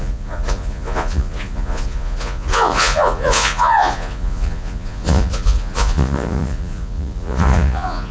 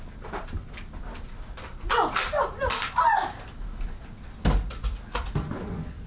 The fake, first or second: first